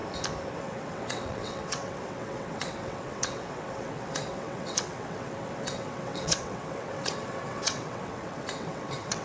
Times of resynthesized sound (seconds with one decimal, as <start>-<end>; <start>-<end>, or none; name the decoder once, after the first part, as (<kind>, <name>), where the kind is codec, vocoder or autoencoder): 0.6-9.2 (vocoder, WaveNeXt)